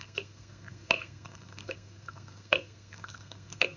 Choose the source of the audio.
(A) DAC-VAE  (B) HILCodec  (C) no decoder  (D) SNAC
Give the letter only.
D